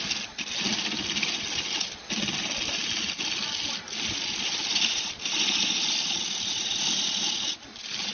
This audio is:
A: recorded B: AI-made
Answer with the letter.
A